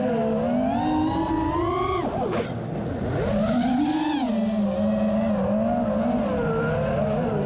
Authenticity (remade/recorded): recorded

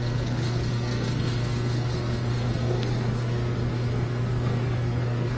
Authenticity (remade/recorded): remade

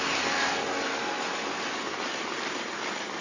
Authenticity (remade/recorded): recorded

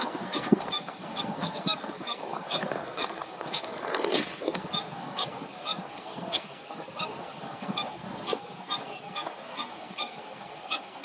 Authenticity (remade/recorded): remade